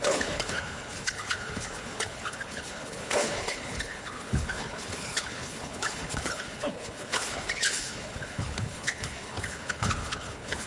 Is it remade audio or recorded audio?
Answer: remade